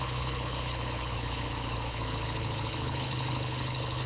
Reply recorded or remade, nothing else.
remade